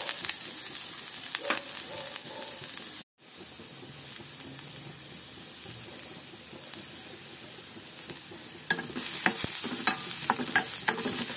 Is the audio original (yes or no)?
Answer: yes